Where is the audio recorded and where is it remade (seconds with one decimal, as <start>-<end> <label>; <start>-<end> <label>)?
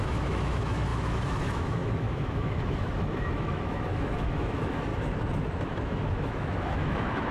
0.0-4.9 remade; 4.9-5.5 recorded; 5.5-7.3 remade